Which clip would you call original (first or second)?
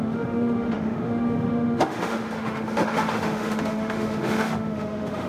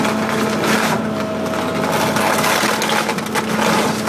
second